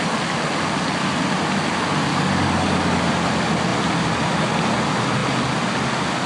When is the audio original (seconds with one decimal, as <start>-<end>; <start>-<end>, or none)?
0.0-2.1; 3.0-6.3